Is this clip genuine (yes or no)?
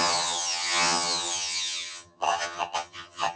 no